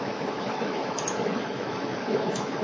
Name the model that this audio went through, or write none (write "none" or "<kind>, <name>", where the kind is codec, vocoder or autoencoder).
autoencoder, DAC-VAE